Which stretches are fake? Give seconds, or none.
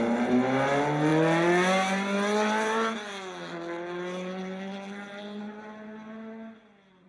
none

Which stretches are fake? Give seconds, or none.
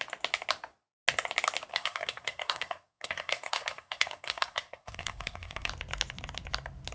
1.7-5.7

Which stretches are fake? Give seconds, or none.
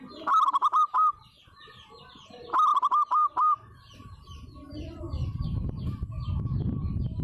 none